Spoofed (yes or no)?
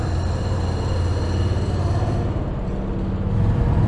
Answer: no